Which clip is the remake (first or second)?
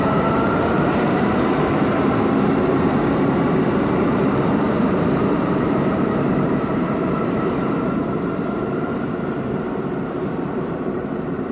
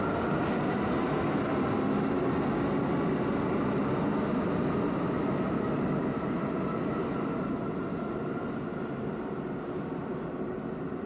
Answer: first